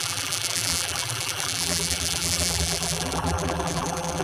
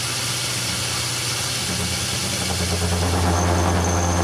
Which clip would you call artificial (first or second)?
first